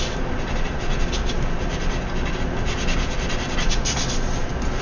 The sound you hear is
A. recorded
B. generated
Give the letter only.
A